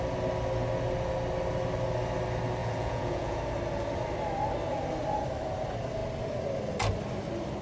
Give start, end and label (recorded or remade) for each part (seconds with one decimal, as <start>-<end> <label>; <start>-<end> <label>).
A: 0.0-2.6 recorded; 2.6-3.4 remade; 3.4-7.6 recorded